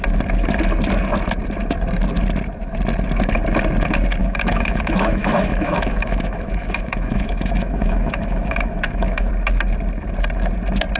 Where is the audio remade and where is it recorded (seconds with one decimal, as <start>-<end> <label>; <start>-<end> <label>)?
0.0-4.2 recorded; 4.2-9.3 remade; 9.3-11.0 recorded